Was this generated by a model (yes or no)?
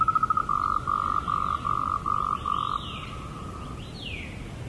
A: no